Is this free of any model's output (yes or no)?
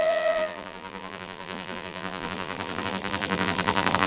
no